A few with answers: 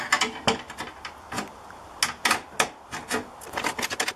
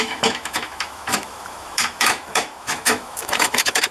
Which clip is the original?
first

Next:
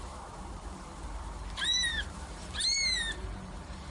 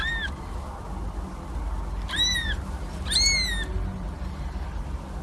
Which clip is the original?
second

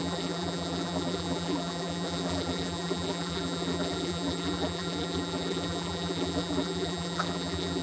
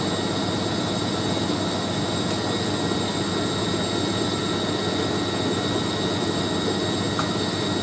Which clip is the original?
second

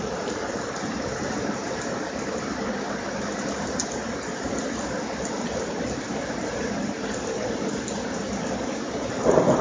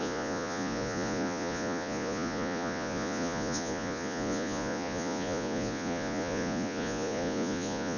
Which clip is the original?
first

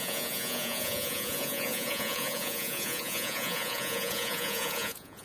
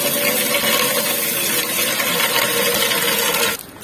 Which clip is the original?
second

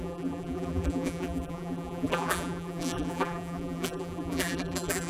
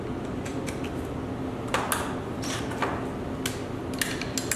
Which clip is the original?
second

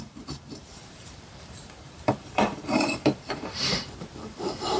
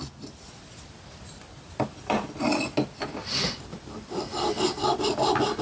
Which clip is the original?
second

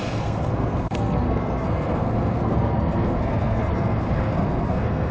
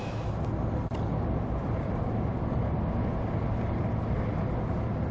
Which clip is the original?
second